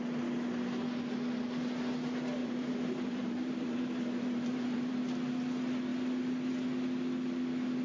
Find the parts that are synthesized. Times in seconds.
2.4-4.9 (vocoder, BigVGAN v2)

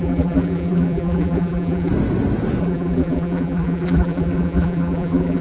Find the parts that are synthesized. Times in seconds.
0.0-1.9 (vocoder, BigVGAN v2); 2.6-5.4

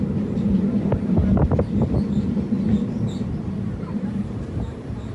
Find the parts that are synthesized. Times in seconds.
0.0-1.2 (vocoder, BigVGAN v2); 3.8-5.1

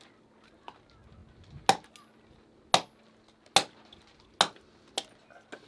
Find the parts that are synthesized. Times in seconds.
none

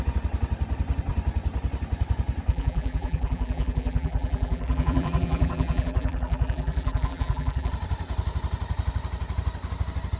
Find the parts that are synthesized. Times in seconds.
2.5-7.7 (vocoder, BigVGAN v2)